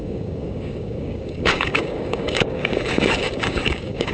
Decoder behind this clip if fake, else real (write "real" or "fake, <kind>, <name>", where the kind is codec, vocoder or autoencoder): fake, codec, DAC